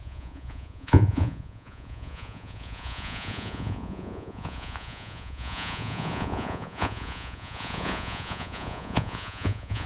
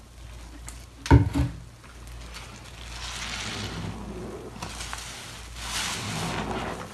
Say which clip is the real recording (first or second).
second